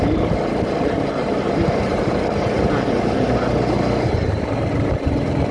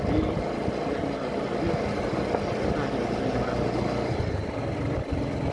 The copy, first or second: first